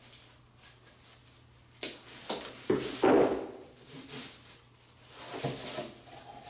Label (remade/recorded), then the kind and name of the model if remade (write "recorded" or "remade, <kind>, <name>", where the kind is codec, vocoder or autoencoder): recorded